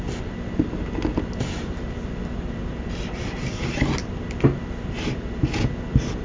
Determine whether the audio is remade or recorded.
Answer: recorded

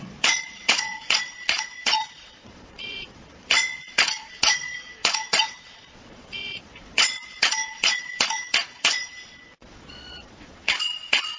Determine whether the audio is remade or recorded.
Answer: remade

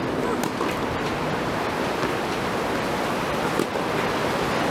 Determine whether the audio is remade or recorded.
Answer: recorded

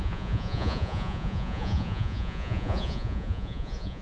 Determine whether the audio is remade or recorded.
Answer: remade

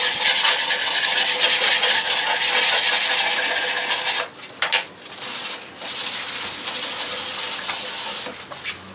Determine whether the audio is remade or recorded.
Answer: recorded